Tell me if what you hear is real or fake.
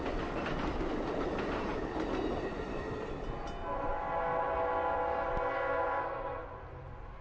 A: real